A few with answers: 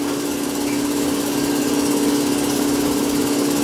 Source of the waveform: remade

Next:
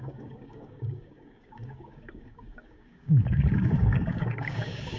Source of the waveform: remade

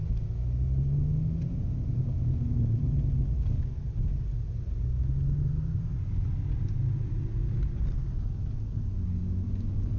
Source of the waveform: recorded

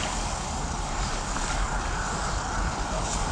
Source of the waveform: remade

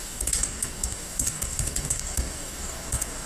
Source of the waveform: remade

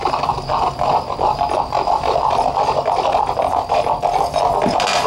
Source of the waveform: recorded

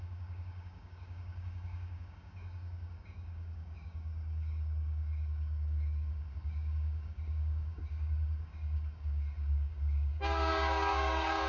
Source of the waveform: remade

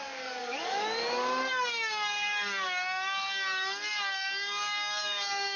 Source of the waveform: remade